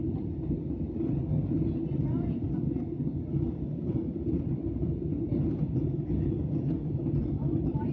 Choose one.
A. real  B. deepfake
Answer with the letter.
A